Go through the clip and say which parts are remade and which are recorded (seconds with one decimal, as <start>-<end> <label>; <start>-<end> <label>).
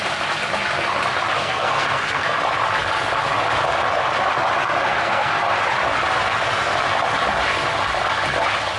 0.0-1.4 recorded; 1.4-2.4 remade; 2.4-4.9 recorded; 4.9-5.4 remade; 5.4-8.8 recorded